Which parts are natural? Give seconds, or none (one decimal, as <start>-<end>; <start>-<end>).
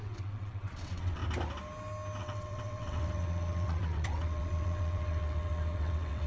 1.2-2.2